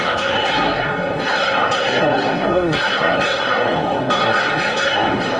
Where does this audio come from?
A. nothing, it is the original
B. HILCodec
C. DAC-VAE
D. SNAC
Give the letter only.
D